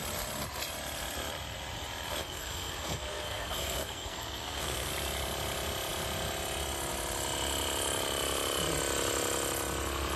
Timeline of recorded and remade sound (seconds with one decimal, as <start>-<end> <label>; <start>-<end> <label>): 0.0-2.2 recorded; 2.2-4.9 remade; 4.9-10.2 recorded